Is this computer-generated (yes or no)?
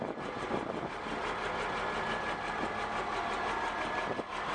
no